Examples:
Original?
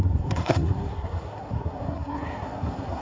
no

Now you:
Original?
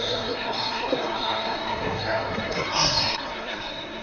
no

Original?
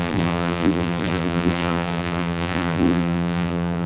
no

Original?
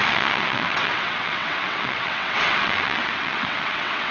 no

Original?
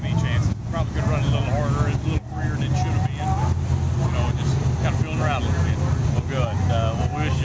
yes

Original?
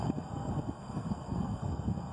no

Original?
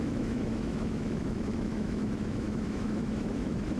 no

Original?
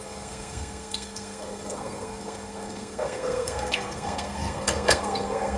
no